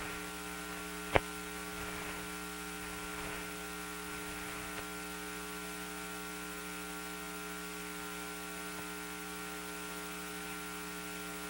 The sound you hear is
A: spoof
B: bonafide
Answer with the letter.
B